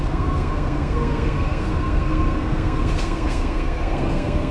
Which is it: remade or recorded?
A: remade